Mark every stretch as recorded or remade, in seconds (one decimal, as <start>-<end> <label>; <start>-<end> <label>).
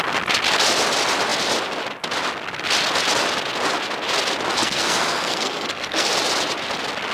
0.0-4.5 recorded; 4.5-6.1 remade; 6.1-7.1 recorded